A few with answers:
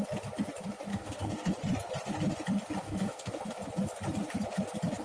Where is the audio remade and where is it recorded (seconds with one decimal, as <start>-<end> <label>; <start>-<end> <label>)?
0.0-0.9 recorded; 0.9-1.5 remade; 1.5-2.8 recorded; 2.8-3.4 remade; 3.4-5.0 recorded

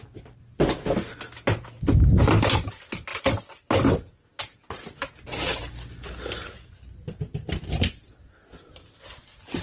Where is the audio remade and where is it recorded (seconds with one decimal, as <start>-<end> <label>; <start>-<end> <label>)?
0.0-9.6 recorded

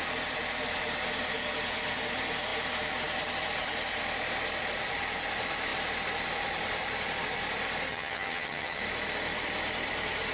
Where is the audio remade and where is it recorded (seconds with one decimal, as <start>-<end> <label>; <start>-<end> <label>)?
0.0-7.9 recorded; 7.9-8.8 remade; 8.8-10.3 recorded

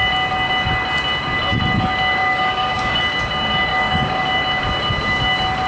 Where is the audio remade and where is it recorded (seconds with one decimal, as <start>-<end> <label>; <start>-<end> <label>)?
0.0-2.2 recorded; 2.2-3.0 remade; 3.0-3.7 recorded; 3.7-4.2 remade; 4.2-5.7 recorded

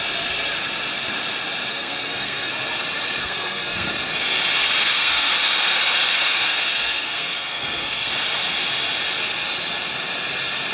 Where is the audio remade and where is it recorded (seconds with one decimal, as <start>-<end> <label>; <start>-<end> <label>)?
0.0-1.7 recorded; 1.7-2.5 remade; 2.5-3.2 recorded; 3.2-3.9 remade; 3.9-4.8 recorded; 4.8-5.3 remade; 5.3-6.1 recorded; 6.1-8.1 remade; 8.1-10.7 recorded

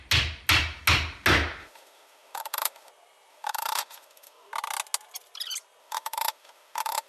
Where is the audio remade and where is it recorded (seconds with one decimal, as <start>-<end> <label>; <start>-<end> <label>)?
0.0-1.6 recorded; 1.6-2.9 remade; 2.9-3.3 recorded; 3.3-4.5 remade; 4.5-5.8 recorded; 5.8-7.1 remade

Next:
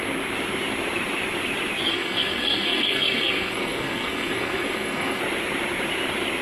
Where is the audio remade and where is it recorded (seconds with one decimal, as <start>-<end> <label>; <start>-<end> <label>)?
0.0-1.9 recorded; 1.9-5.2 remade; 5.2-6.4 recorded